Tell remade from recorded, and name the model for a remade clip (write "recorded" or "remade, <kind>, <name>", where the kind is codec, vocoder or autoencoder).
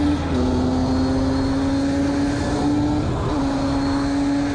recorded